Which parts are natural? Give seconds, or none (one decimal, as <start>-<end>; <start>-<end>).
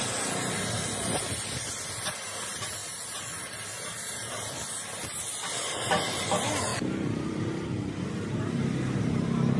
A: 0.0-6.7; 7.9-9.6